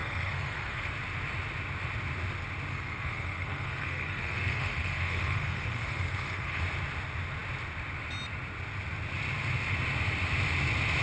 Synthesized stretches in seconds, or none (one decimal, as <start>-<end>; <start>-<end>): 0.0-0.9; 2.7-6.6